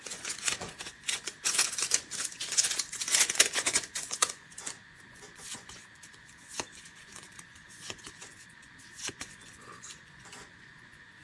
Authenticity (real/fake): fake